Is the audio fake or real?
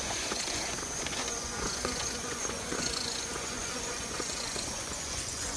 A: fake